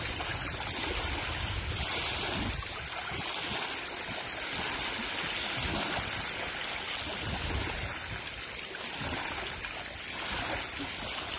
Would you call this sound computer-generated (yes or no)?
no